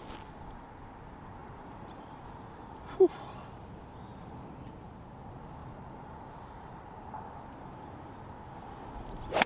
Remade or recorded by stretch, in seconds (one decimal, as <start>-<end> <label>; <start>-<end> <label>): 0.0-1.4 recorded; 1.4-2.4 remade; 2.4-5.6 recorded; 5.6-7.2 remade; 7.2-9.5 recorded